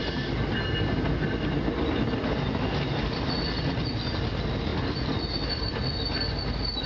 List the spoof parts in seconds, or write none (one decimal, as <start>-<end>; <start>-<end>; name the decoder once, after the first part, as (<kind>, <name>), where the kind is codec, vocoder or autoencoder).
none